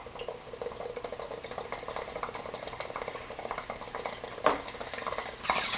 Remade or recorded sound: recorded